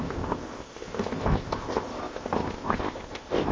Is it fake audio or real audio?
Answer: fake